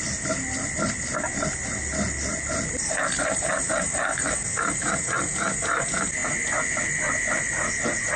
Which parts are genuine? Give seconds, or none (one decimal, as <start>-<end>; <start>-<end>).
0.0-8.2